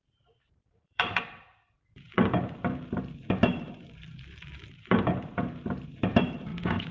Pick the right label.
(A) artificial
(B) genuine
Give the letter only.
A